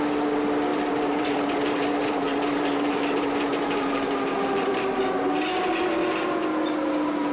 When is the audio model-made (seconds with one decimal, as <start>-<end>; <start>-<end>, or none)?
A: 0.7-5.0

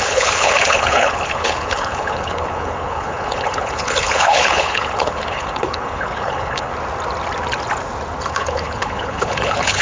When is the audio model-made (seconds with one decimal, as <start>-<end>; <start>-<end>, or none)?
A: 0.0-6.7; 8.3-9.8

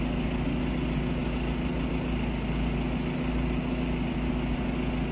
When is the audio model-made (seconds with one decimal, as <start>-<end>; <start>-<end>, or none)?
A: none

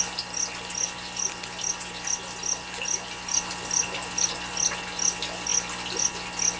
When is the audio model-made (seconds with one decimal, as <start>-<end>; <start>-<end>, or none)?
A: none

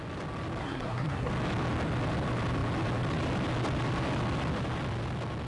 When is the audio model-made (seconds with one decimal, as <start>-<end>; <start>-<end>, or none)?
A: 0.6-1.3

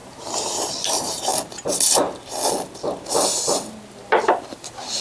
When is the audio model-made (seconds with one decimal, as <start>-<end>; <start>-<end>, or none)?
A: 0.0-1.3; 4.3-5.0

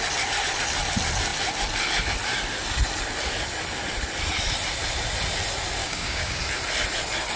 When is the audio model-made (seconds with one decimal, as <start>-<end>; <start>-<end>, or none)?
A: 5.8-6.4